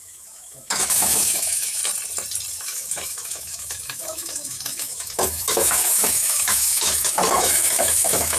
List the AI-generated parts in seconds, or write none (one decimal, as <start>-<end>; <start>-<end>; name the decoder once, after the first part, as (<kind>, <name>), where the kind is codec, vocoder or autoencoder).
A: 0.0-1.8 (autoencoder, DAC-VAE); 2.5-8.4